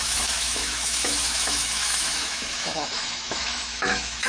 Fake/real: fake